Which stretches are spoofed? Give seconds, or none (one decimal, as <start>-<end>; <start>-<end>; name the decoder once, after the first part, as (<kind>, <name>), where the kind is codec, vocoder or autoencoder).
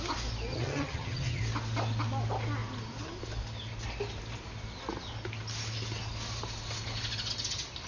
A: 0.5-1.4 (vocoder, HiFi-GAN)